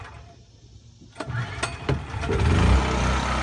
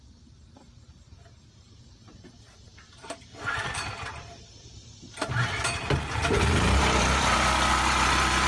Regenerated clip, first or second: second